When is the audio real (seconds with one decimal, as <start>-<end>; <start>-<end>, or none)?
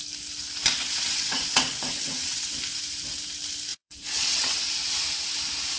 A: 0.0-0.8; 2.5-3.7; 4.7-5.8